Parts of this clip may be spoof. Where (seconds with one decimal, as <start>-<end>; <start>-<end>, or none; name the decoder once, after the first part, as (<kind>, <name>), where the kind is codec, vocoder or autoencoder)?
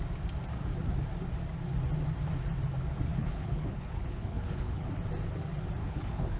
3.1-4.9 (codec, HILCodec); 5.8-6.4